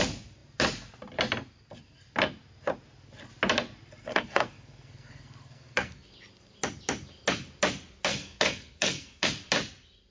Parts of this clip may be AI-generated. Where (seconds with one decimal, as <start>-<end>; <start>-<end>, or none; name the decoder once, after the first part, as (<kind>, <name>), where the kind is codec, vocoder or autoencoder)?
4.0-6.1 (codec, SNAC); 8.1-9.3